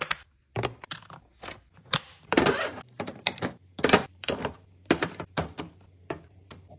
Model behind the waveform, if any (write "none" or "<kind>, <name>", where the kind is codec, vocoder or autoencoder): vocoder, BigVGAN v2